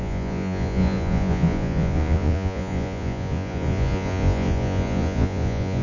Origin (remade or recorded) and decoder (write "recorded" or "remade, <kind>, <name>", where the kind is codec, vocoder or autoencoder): remade, vocoder, Vocos